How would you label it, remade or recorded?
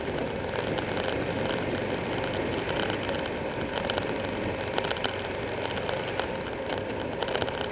recorded